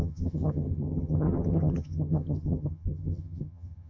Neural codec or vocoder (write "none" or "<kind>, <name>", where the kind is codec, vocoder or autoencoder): vocoder, HiFi-GAN